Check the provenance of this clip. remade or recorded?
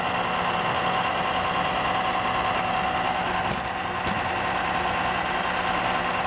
recorded